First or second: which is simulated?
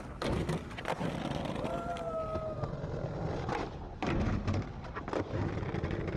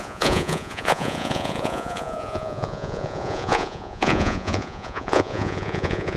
second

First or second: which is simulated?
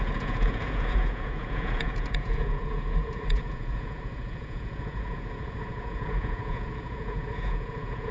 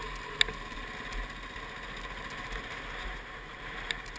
first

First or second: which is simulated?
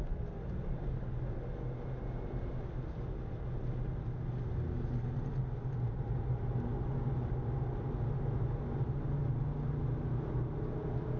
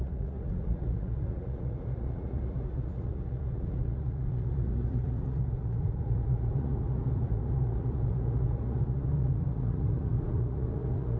second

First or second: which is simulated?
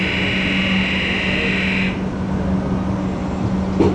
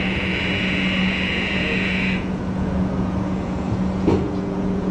second